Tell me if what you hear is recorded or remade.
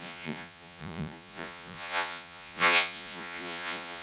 remade